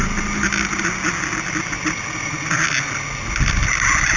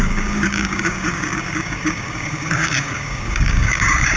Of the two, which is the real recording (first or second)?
first